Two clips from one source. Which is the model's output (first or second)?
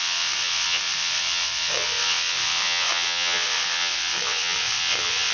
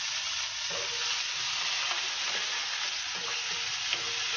first